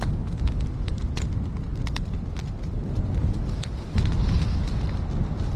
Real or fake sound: real